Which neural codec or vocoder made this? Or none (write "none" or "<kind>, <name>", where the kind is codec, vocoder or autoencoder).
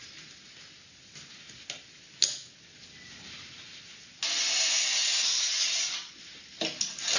none